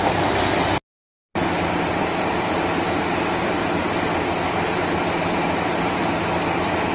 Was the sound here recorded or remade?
recorded